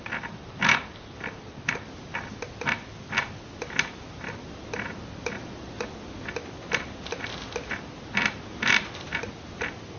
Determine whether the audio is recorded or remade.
recorded